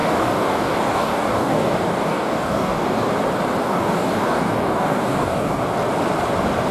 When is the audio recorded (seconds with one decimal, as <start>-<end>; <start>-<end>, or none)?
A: 3.1-3.6; 5.6-6.7